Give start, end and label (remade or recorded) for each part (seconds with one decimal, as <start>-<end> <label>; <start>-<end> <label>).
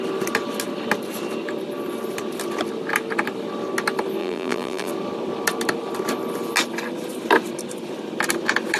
0.0-4.2 recorded; 4.2-4.9 remade; 4.9-8.8 recorded